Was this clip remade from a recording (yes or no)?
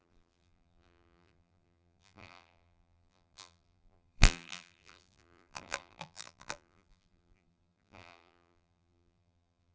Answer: yes